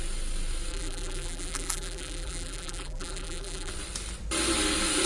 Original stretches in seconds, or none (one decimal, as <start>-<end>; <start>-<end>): 0.0-0.7; 3.7-5.1